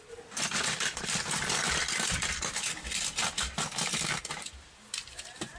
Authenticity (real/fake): real